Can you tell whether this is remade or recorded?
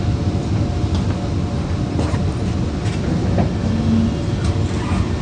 recorded